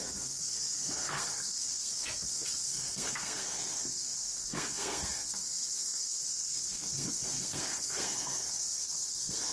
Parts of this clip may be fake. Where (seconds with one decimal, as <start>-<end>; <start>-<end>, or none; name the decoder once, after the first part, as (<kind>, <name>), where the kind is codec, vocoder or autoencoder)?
0.0-9.5 (codec, SNAC)

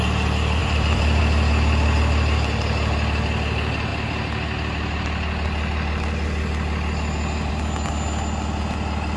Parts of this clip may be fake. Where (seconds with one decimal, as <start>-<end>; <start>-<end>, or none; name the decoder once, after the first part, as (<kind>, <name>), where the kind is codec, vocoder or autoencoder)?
0.6-1.2 (vocoder, BigVGAN v2)

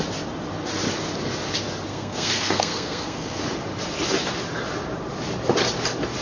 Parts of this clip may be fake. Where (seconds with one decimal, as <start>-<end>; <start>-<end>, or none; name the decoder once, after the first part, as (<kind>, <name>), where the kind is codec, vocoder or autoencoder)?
1.9-3.4 (codec, SNAC)

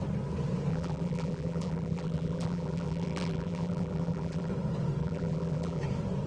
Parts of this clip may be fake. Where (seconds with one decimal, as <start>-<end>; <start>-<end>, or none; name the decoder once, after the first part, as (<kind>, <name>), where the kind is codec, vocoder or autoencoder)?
0.7-4.5 (vocoder, BigVGAN v2); 5.0-5.8

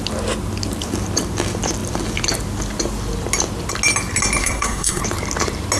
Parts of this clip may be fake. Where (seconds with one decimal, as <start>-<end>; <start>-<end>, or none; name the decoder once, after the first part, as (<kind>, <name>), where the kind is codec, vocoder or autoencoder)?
4.4-5.0 (codec, SNAC)

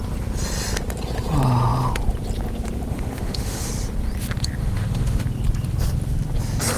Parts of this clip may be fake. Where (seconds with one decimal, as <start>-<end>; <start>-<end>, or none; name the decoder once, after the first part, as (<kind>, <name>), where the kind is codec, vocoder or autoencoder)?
2.9-3.7 (autoencoder, DAC-VAE); 4.6-5.2

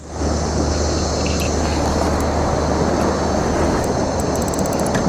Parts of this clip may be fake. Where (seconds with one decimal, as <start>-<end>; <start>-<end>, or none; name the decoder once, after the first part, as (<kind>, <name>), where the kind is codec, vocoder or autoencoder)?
none

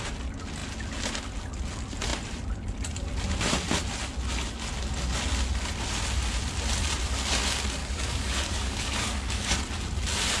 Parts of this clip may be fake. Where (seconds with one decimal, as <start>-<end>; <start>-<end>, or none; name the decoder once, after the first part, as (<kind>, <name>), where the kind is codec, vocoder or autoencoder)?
7.8-9.6 (codec, DAC)